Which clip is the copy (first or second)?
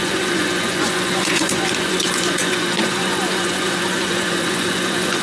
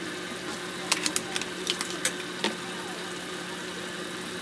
first